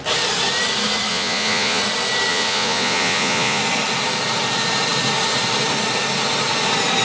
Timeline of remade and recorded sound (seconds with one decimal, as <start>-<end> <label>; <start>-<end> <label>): 0.0-1.1 recorded; 1.1-1.8 remade; 1.8-2.3 recorded; 2.3-3.6 remade; 3.6-7.0 recorded

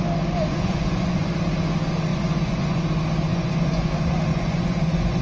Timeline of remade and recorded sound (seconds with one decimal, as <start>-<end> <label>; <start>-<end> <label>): 0.0-0.5 recorded; 0.5-1.3 remade; 1.3-2.1 recorded; 2.1-2.8 remade; 2.8-3.3 recorded; 3.3-3.9 remade; 3.9-4.3 recorded; 4.3-5.2 remade

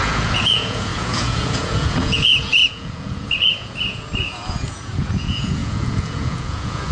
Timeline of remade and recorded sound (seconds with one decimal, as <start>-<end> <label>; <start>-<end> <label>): 0.0-6.9 remade

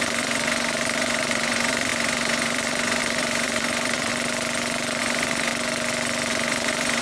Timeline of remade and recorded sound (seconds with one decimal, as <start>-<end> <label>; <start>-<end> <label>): 0.0-4.1 remade; 4.1-5.0 recorded; 5.0-5.5 remade; 5.5-6.3 recorded; 6.3-7.0 remade

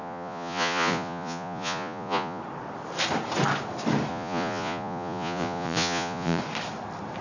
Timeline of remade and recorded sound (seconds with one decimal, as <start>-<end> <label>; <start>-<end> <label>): 0.0-2.4 remade; 2.4-4.1 recorded; 4.1-6.4 remade; 6.4-7.2 recorded

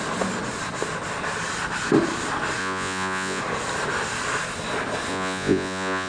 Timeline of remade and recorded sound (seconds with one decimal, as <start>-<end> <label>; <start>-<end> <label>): 0.0-2.6 recorded; 2.6-3.4 remade; 3.4-5.1 recorded; 5.1-6.1 remade